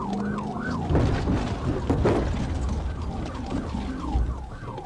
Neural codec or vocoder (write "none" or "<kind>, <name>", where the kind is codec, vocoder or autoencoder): none